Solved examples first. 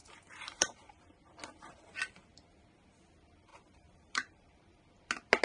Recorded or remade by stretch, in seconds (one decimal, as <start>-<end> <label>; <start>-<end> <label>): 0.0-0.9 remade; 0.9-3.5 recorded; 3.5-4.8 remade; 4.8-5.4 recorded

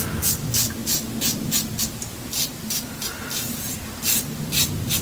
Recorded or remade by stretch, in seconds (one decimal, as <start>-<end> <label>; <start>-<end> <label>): 0.0-5.0 recorded

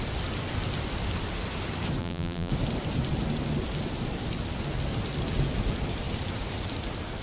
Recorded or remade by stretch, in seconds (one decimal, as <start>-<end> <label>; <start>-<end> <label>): 0.0-2.0 recorded; 2.0-2.5 remade; 2.5-7.2 recorded

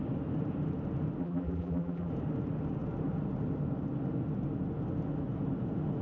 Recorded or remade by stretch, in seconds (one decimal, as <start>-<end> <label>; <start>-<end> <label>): 0.0-1.2 recorded; 1.2-2.1 remade; 2.1-6.0 recorded